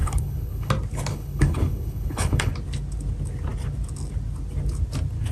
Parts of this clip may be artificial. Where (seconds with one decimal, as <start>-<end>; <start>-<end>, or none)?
0.0-0.7; 1.1-2.5